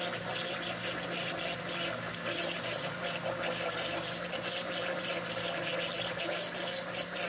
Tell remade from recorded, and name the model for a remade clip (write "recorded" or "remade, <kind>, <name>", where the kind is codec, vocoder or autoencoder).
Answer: recorded